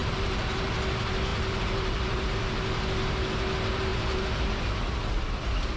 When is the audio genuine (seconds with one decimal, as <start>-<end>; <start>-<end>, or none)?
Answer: 0.7-1.3; 2.4-3.9; 5.3-5.8